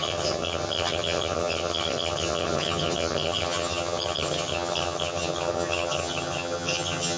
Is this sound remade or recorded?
remade